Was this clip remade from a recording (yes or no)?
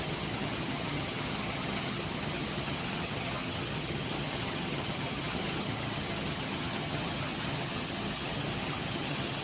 yes